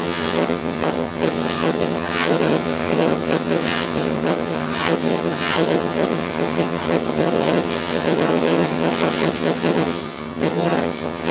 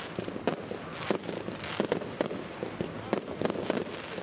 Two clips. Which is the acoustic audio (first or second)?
second